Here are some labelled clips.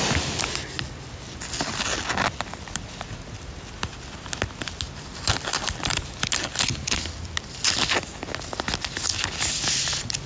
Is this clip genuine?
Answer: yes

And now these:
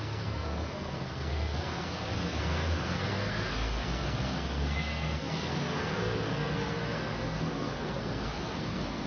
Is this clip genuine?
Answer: no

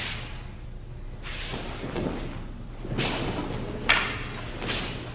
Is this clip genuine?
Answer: yes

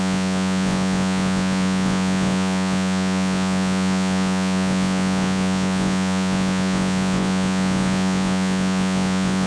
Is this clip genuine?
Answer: no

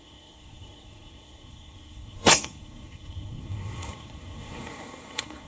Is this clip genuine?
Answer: no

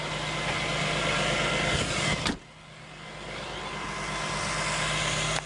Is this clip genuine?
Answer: yes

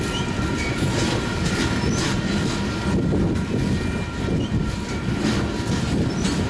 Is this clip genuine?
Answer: yes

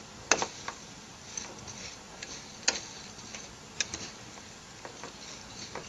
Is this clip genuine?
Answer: yes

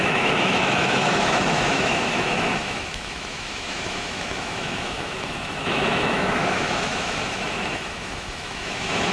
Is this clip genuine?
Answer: no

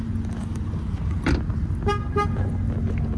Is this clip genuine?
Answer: yes